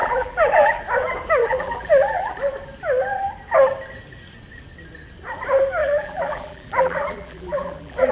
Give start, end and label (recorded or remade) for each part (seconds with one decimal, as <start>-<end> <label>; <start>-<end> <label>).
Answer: 0.0-0.8 remade; 0.8-1.4 recorded; 1.4-2.5 remade; 2.5-5.8 recorded; 5.8-8.1 remade